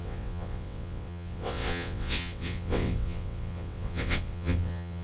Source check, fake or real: fake